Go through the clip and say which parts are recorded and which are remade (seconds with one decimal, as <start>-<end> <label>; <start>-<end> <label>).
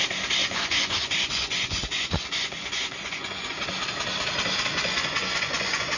0.0-0.4 recorded; 0.4-3.5 remade; 3.5-4.7 recorded; 4.7-6.0 remade